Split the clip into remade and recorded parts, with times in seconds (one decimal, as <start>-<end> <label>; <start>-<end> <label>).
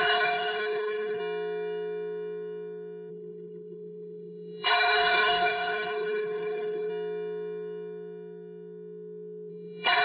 0.0-1.2 remade; 1.2-3.1 recorded; 3.1-6.9 remade; 6.9-9.5 recorded; 9.5-10.0 remade